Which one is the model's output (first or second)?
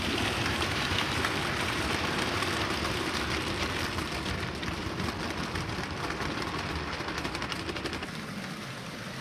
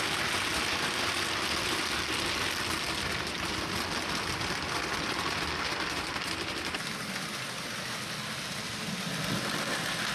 first